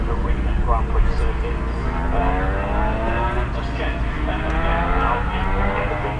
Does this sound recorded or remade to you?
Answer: recorded